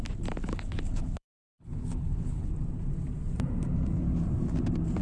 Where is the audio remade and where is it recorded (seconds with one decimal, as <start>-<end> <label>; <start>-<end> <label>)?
0.0-0.4 recorded; 0.4-2.5 remade; 2.5-5.0 recorded